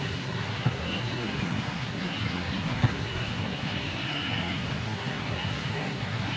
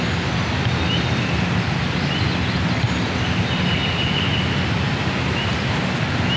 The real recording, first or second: second